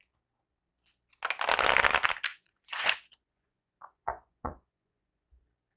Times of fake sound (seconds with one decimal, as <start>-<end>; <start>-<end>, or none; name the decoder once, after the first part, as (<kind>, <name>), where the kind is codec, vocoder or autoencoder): 2.3-5.3 (vocoder, Vocos)